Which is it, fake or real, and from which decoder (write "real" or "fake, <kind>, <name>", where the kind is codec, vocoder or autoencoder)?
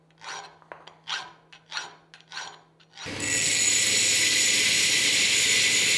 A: real